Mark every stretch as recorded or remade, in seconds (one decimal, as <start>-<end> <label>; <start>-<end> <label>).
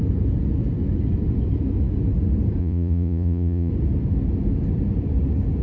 0.0-2.6 recorded; 2.6-3.7 remade; 3.7-5.6 recorded